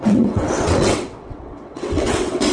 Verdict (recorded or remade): remade